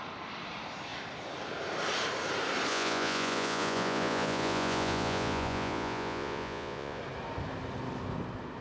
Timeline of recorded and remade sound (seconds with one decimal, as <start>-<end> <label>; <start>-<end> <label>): 0.0-2.7 recorded; 2.7-7.0 remade; 7.0-8.6 recorded